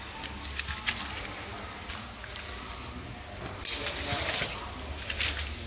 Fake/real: real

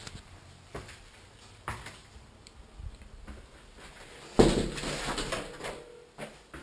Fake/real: real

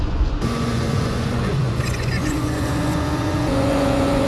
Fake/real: fake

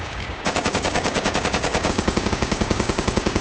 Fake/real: fake